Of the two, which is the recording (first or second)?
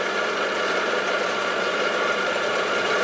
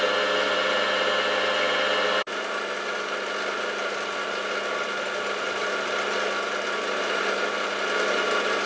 second